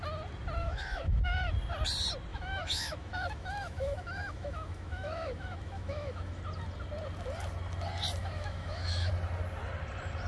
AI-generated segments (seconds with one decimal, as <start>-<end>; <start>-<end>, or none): 0.6-1.5; 2.3-6.4; 8.2-9.1